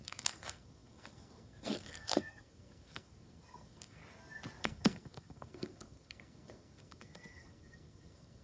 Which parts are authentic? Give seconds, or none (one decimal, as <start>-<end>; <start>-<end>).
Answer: 4.0-4.6